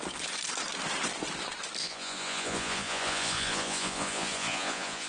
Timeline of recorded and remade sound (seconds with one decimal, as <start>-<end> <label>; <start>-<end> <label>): 0.0-1.8 recorded; 1.8-5.1 remade